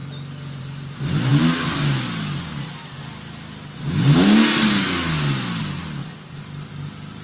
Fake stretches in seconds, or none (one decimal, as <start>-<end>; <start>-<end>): none